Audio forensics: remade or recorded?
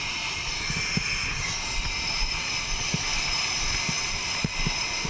recorded